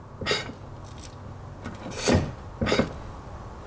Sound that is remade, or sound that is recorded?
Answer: recorded